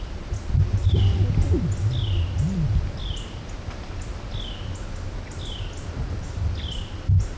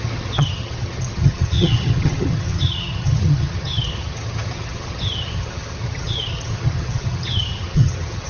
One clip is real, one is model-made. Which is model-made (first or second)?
second